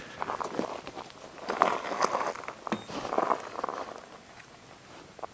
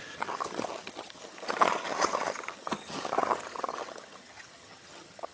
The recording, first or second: first